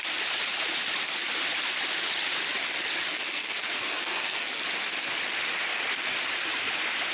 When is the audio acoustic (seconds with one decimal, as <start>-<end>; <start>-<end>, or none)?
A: 0.0-3.1; 4.6-7.1